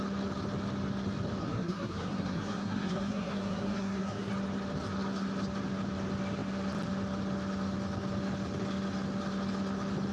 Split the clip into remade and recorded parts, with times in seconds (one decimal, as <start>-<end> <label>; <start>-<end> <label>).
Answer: 0.0-1.4 recorded; 1.4-4.3 remade; 4.3-10.1 recorded